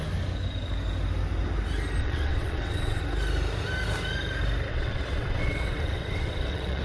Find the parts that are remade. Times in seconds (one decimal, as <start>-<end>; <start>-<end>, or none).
2.0-3.0; 4.7-6.8